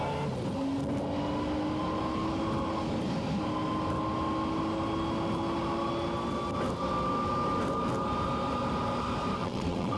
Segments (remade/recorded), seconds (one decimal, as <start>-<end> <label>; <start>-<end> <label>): 0.0-9.4 recorded; 9.4-10.0 remade